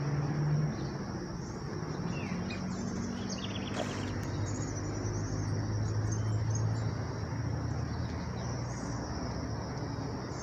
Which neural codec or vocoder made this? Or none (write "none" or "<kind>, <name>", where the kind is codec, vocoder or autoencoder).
none